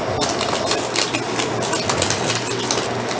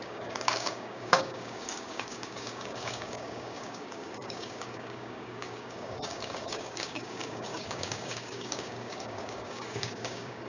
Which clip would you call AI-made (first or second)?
second